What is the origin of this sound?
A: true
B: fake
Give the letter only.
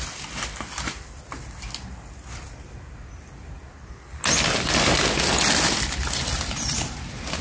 A